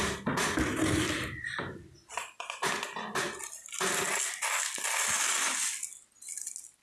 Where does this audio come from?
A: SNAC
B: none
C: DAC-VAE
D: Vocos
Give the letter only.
B